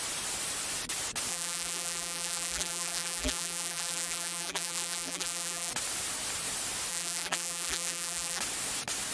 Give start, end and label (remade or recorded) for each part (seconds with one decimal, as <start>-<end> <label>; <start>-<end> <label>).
0.0-1.3 recorded; 1.3-5.7 remade; 5.7-6.9 recorded; 6.9-8.4 remade; 8.4-9.1 recorded